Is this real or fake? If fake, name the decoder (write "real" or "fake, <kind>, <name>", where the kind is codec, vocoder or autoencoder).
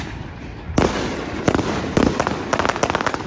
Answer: real